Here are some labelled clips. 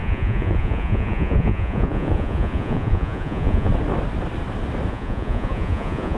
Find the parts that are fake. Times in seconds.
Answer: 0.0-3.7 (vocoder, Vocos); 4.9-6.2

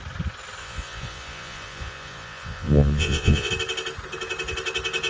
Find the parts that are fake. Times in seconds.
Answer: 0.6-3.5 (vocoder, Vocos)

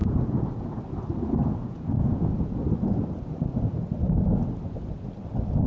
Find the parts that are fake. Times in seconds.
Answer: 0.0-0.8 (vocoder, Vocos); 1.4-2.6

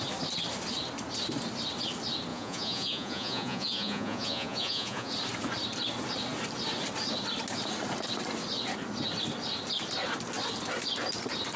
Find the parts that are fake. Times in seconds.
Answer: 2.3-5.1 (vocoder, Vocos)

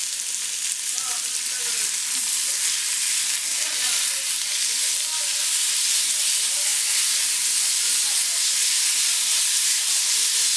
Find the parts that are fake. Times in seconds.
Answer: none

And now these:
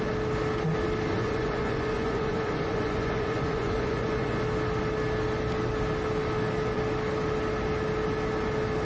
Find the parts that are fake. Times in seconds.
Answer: 1.1-4.4 (vocoder, Vocos)

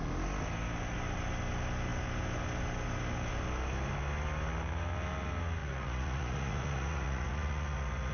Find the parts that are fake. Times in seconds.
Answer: 5.6-8.1 (vocoder, Vocos)